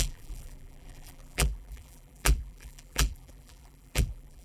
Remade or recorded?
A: remade